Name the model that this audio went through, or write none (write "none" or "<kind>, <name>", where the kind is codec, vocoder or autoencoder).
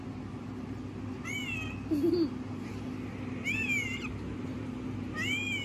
none